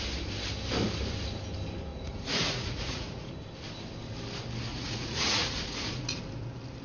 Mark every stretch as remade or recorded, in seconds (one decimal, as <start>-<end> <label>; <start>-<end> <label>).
0.0-1.9 recorded; 1.9-3.3 remade; 3.3-4.7 recorded; 4.7-6.2 remade; 6.2-6.8 recorded